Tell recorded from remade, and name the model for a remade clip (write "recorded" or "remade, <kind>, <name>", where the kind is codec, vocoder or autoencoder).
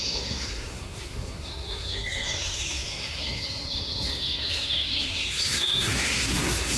remade, codec, SNAC